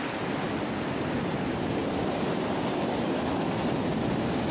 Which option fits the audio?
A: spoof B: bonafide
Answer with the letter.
B